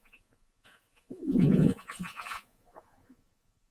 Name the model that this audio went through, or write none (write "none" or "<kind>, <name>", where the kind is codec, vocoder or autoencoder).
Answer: vocoder, Vocos